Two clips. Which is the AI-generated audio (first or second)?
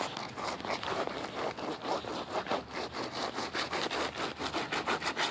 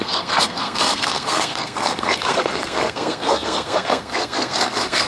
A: second